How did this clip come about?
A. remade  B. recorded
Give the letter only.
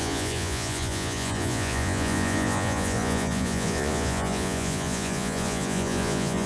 A